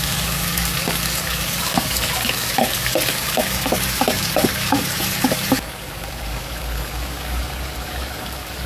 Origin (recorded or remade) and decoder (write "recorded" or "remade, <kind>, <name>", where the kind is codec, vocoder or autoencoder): remade, codec, DAC